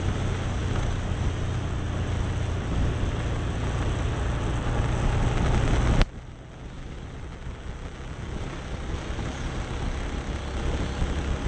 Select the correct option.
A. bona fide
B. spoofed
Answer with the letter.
A